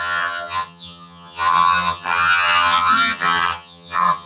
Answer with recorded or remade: remade